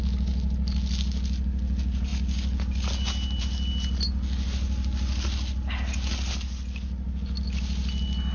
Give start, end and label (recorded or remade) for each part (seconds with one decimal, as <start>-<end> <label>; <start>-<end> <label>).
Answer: 0.0-8.3 recorded